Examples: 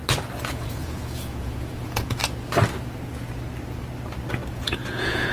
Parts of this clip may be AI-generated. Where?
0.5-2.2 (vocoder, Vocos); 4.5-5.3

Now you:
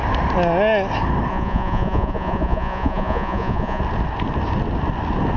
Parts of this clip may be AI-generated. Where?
1.3-3.8 (vocoder, Vocos)

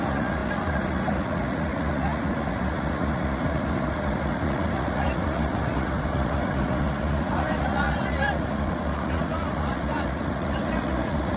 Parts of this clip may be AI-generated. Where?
0.0-11.4 (vocoder, Vocos)

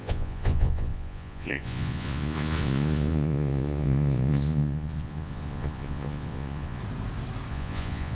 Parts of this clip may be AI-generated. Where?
0.0-6.8 (vocoder, Vocos); 7.5-8.1

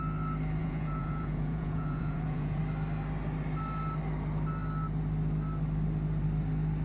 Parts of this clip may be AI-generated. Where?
0.6-2.6 (vocoder, Vocos)

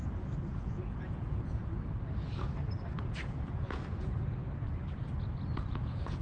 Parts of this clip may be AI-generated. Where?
0.6-1.7 (vocoder, Vocos); 3.0-4.4; 5.7-6.2